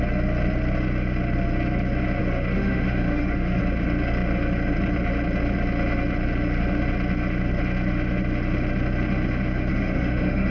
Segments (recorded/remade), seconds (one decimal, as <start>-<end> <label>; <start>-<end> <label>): 0.0-2.2 recorded; 2.2-3.6 remade; 3.6-9.7 recorded; 9.7-10.5 remade